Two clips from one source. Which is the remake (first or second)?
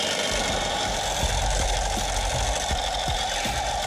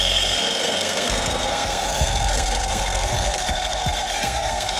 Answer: second